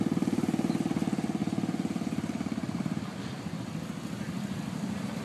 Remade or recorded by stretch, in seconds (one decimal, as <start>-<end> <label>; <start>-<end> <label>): 0.0-5.2 recorded